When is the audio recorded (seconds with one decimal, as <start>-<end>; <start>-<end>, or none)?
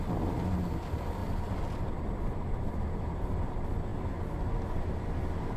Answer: 0.0-5.6